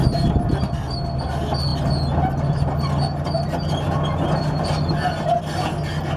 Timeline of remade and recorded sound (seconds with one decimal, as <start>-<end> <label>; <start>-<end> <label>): 0.0-6.2 recorded